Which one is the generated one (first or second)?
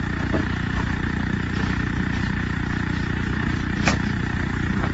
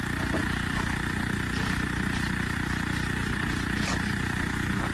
first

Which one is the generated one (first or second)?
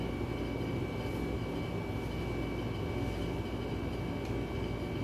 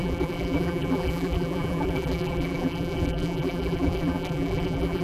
second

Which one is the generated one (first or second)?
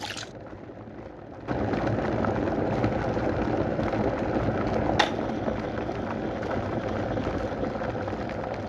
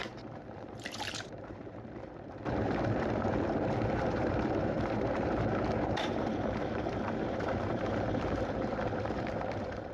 second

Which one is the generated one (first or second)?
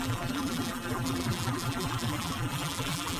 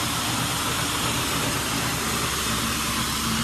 first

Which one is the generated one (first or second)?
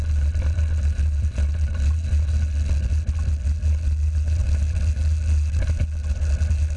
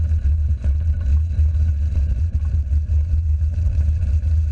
second